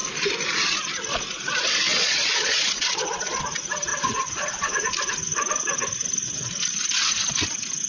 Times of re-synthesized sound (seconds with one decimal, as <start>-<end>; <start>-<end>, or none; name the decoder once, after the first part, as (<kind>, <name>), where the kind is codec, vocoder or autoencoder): 1.9-3.4 (vocoder, Vocos); 3.9-4.9